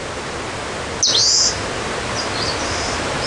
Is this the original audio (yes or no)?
yes